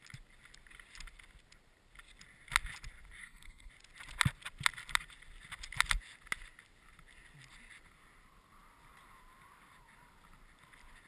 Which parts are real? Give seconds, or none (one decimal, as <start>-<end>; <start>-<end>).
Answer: 0.0-3.2; 3.7-11.1